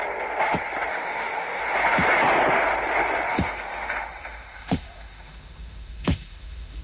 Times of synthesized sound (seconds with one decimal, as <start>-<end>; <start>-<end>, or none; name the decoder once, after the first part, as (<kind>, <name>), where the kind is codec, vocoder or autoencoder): 0.9-1.6 (autoencoder, DAC-VAE); 3.3-6.8